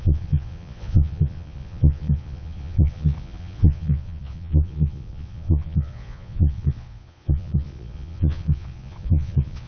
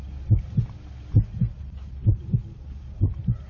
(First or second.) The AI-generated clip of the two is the first